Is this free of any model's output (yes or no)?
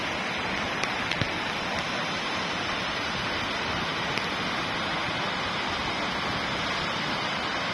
yes